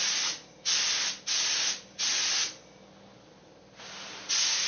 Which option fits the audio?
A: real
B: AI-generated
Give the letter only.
A